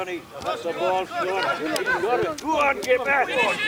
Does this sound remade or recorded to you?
recorded